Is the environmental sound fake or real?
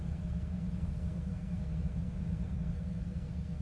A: fake